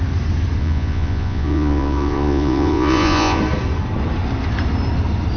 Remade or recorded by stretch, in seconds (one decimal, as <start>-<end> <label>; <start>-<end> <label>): 0.0-0.6 recorded; 0.6-3.4 remade; 3.4-5.4 recorded